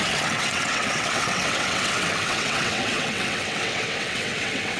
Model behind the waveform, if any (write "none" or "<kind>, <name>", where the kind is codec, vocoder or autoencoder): vocoder, WaveNeXt